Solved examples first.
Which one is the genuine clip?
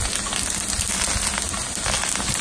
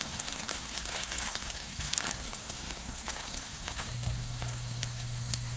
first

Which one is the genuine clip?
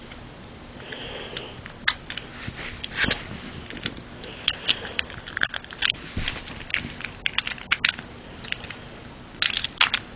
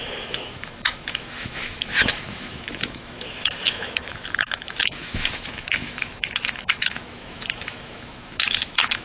first